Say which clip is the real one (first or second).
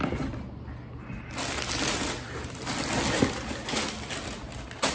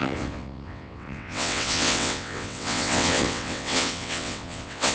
first